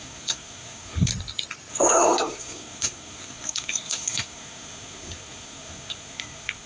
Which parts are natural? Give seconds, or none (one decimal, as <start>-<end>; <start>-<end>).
1.1-1.7